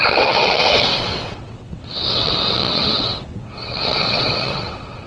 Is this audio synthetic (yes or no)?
yes